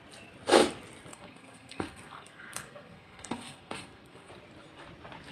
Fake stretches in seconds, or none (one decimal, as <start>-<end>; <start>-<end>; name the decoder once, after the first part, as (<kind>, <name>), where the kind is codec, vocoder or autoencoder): 1.1-4.3 (codec, SNAC)